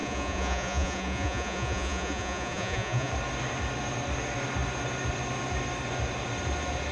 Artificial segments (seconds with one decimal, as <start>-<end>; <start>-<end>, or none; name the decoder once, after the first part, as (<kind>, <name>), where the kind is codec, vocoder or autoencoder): 0.0-3.1 (vocoder, Vocos)